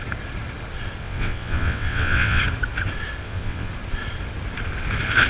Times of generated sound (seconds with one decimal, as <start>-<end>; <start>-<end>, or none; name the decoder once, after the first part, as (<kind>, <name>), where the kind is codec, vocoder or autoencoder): 1.0-2.4 (vocoder, WaveNeXt); 3.2-3.7